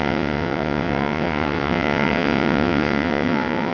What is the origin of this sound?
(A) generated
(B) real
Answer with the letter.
A